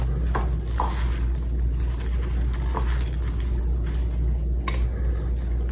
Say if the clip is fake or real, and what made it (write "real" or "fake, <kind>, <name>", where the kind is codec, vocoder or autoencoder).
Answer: real